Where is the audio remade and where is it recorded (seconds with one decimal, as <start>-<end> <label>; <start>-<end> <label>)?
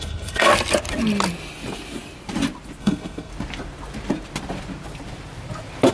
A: 0.0-0.5 remade; 0.5-2.8 recorded; 2.8-3.3 remade; 3.3-5.9 recorded